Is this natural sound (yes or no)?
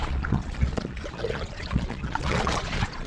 no